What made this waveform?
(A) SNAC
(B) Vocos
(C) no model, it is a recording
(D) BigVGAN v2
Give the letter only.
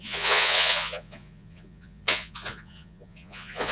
B